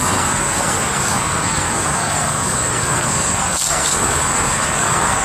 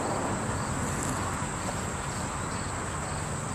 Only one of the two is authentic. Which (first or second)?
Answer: second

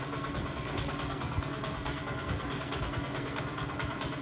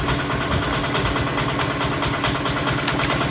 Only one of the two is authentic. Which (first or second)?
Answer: second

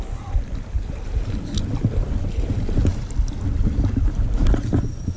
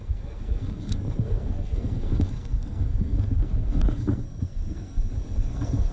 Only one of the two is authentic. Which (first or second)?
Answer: first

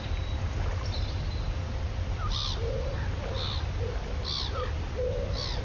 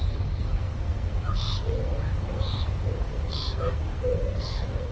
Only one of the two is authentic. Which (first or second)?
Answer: first